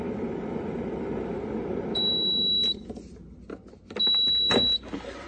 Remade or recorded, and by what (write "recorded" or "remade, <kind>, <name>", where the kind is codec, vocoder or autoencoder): recorded